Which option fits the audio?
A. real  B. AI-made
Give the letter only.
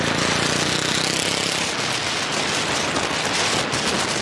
A